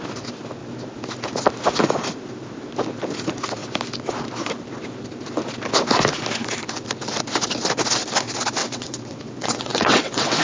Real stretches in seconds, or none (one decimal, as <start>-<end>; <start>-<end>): 0.0-8.6